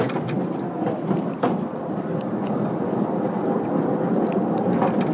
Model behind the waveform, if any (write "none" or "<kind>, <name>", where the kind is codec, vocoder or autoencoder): vocoder, BigVGAN v2